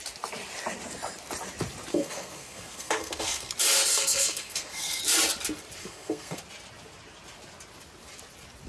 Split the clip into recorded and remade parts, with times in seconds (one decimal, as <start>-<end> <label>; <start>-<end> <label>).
0.0-1.9 recorded; 1.9-3.5 remade; 3.5-3.9 recorded; 3.9-5.0 remade; 5.0-5.8 recorded; 5.8-6.4 remade; 6.4-8.7 recorded